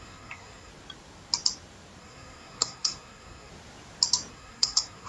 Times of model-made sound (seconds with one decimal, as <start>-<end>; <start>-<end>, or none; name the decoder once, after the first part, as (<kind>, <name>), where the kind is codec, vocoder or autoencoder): 0.0-0.7 (codec, SNAC); 2.0-3.5; 4.3-5.1